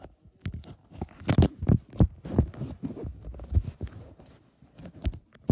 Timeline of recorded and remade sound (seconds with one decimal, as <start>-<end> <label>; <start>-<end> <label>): 0.0-5.5 recorded